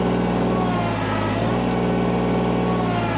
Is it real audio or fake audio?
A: real